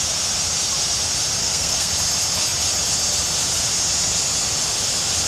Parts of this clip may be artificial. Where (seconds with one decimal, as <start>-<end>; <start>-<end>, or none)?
1.4-1.9